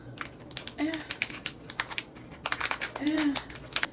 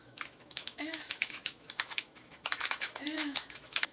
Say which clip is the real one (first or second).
first